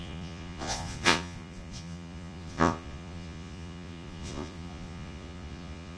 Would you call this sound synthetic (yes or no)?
yes